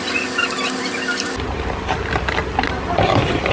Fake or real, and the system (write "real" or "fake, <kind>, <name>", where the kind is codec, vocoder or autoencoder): real